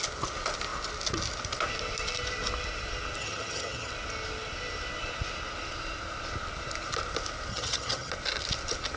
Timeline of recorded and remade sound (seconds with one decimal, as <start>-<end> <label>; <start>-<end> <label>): 0.0-3.2 recorded; 3.2-3.9 remade; 3.9-7.5 recorded; 7.5-8.1 remade; 8.1-9.0 recorded